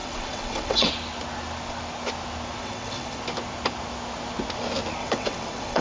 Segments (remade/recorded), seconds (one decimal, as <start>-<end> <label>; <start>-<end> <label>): 0.0-0.9 remade; 0.9-2.6 recorded; 2.6-3.2 remade; 3.2-5.0 recorded; 5.0-5.8 remade

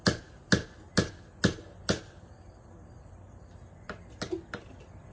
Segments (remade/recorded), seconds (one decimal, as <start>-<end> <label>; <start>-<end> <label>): 0.0-5.1 recorded

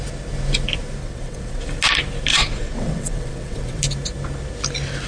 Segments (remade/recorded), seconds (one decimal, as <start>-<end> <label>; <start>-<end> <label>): 0.0-1.0 recorded; 1.0-1.6 remade; 1.6-2.3 recorded; 2.3-3.8 remade; 3.8-5.1 recorded

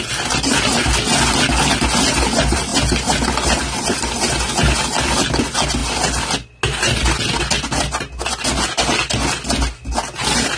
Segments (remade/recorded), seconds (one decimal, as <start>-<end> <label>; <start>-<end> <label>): 0.0-10.6 recorded

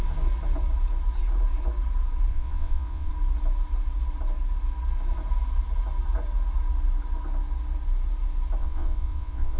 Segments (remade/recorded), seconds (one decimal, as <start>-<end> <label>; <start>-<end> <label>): 0.0-2.3 recorded; 2.3-3.1 remade; 3.1-8.6 recorded; 8.6-9.6 remade